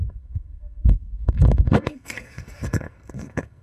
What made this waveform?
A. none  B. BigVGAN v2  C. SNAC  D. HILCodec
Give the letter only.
C